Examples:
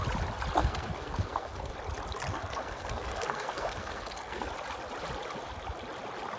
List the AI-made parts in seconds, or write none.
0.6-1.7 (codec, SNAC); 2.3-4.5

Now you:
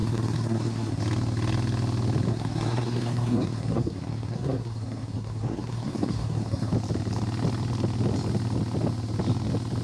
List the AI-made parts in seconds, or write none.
0.0-1.0 (codec, SNAC); 2.3-6.7

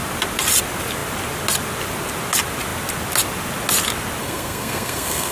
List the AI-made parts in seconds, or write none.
4.2-5.3 (codec, SNAC)

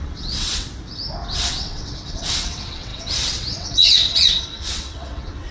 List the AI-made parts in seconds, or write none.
0.0-0.7 (vocoder, WaveNeXt); 1.3-5.5

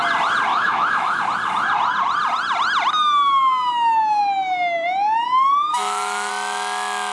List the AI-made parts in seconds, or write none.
0.5-1.2 (autoencoder, DAC-VAE); 5.7-6.3